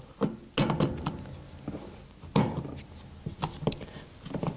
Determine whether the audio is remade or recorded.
recorded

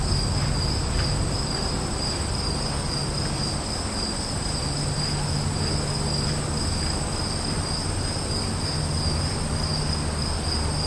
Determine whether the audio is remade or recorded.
recorded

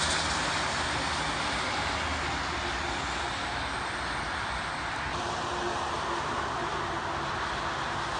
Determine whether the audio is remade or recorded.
recorded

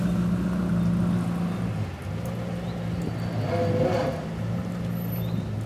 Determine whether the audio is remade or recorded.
recorded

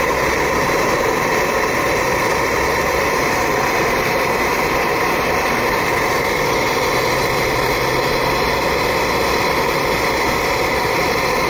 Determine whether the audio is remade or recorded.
remade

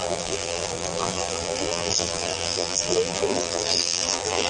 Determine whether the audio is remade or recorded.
remade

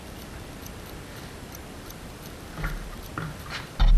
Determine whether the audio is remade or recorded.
remade